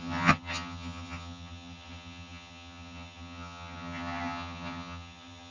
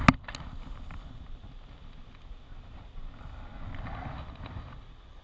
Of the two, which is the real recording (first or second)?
second